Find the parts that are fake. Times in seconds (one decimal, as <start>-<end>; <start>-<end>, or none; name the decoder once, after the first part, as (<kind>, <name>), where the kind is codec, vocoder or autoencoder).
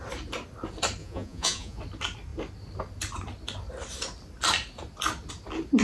1.0-1.8 (vocoder, Vocos)